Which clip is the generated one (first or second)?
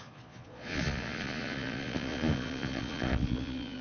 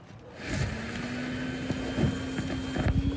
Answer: first